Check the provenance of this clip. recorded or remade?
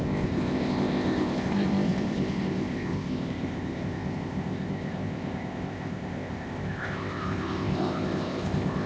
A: remade